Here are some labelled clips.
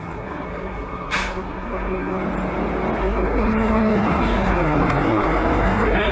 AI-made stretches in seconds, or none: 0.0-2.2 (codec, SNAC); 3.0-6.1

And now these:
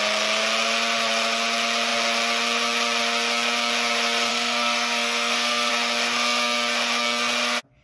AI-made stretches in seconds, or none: 4.3-5.7 (codec, SNAC)